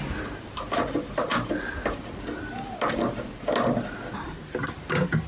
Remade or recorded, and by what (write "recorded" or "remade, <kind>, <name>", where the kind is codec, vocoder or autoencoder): recorded